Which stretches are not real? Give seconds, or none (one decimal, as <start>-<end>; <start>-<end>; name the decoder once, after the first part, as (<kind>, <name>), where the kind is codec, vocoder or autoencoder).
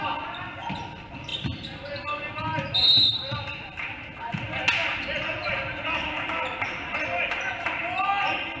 none